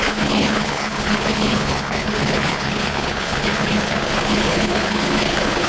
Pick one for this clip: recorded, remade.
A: remade